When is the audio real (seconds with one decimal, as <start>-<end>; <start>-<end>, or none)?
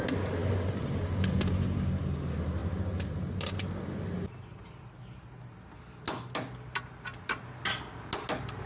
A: 0.0-8.7